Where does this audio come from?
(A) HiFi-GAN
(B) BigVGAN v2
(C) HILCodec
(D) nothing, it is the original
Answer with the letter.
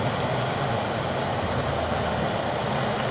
D